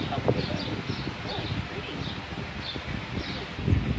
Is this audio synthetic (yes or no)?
no